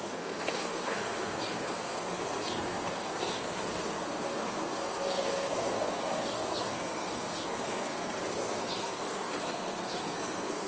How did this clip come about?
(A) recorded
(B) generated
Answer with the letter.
B